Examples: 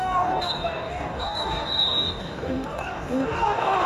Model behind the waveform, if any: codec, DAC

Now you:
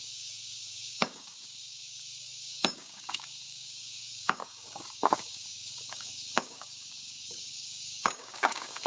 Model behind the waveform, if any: codec, DAC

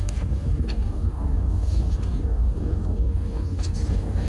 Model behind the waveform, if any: codec, DAC